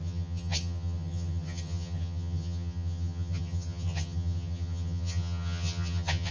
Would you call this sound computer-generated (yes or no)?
yes